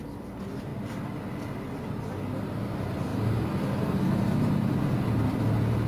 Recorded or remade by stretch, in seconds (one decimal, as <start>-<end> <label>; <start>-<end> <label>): 0.0-5.9 recorded